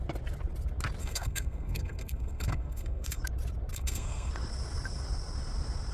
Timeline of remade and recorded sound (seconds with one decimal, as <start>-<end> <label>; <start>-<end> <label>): 0.0-1.0 recorded; 1.0-3.2 remade; 3.2-3.7 recorded; 3.7-4.3 remade; 4.3-5.9 recorded